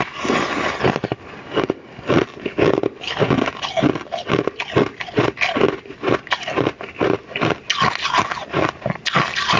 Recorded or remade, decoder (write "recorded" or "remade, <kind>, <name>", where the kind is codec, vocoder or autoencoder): recorded